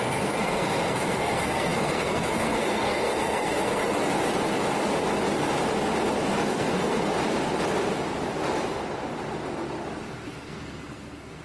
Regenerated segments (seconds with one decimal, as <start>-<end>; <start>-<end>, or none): 0.0-3.8; 6.5-7.1; 10.3-11.4